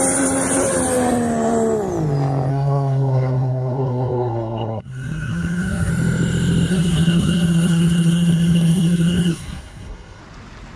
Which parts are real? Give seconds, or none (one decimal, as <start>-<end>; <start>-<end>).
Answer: 0.0-2.5; 5.9-6.7; 10.2-10.8